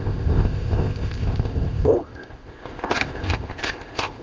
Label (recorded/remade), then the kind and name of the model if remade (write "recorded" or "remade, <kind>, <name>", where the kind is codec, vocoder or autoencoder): remade, codec, ZipCodec